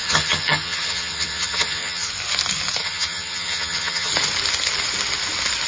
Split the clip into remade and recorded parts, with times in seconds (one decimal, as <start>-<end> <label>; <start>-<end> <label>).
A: 0.0-2.1 remade; 2.1-2.8 recorded; 2.8-4.1 remade; 4.1-5.7 recorded